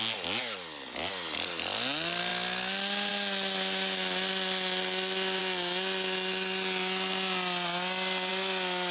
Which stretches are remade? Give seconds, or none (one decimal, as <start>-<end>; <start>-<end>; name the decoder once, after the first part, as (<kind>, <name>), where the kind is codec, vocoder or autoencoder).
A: none